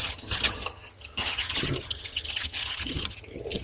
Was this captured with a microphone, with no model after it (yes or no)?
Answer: no